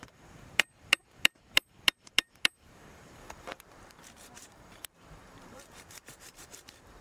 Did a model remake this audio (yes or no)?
yes